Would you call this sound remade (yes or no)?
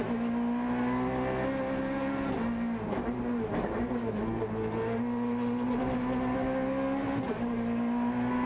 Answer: no